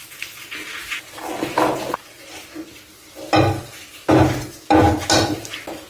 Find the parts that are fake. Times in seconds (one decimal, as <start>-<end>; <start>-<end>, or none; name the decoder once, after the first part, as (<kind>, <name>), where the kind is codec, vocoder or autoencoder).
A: none

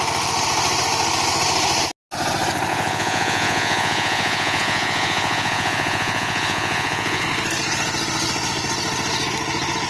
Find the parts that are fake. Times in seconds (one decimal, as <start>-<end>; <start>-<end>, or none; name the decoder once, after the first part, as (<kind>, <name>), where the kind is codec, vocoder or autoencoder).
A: 2.7-7.2 (vocoder, Vocos)

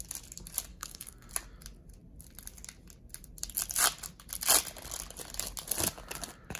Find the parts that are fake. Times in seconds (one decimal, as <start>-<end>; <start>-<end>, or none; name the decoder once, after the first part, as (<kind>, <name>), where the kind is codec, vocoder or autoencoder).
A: 0.7-1.3 (codec, SNAC)

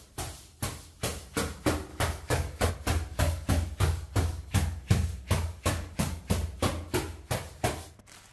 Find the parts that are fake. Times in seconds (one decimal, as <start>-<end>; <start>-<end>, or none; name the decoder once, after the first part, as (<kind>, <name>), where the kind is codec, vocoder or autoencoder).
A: 1.9-2.7 (codec, DAC); 3.1-6.2

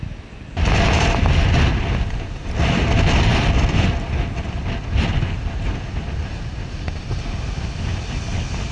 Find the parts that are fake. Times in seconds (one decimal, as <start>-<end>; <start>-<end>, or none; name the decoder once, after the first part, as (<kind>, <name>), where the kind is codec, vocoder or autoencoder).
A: none

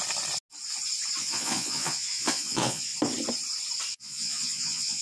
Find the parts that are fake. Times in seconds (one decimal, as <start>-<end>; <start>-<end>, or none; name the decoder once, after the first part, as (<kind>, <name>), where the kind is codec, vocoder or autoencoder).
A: 1.2-2.9 (vocoder, Vocos); 3.9-5.0

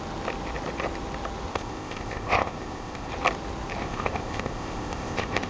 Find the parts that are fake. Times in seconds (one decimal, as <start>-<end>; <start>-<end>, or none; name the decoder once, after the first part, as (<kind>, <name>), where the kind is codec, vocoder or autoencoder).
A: 1.5-3.1 (codec, ZipCodec); 3.8-5.5

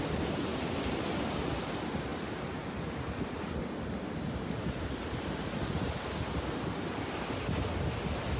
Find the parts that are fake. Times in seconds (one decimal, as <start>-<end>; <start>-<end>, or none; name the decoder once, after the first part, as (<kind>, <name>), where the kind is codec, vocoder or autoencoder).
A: 0.5-1.0 (vocoder, BigVGAN v2)